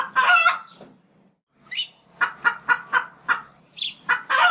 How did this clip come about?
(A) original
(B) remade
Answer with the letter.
A